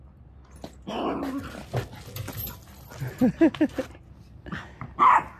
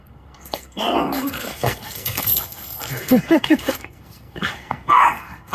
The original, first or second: first